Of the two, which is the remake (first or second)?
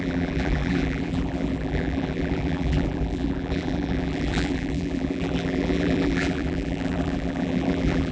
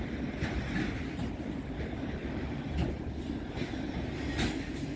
first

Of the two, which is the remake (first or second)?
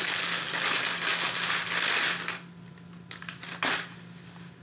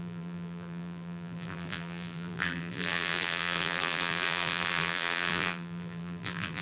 second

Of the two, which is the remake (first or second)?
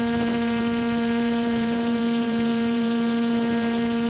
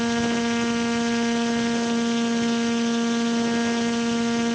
first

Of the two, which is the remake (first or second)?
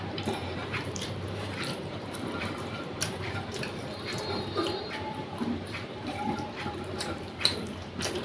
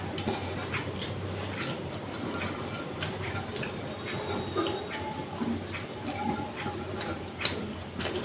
first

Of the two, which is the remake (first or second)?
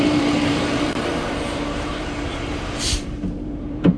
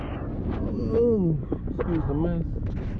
first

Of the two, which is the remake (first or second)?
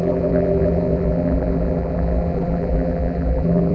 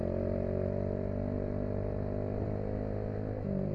first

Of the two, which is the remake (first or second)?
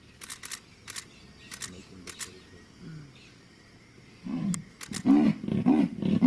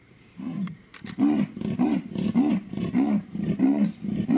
second